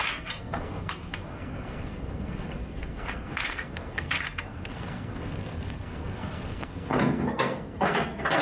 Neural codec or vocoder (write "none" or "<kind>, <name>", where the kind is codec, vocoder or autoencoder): codec, SNAC